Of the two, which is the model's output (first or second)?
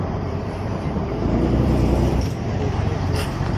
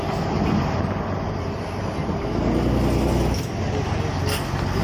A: first